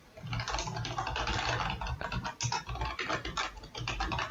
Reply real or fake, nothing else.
real